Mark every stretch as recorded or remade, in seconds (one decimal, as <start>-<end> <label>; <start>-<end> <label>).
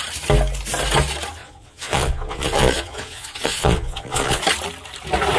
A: 0.0-1.4 recorded; 1.4-4.4 remade; 4.4-5.4 recorded